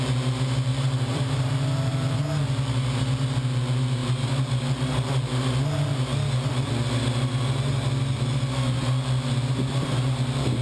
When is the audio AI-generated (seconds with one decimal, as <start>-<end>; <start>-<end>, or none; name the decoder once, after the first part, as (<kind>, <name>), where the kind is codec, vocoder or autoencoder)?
0.7-1.5 (vocoder, BigVGAN v2)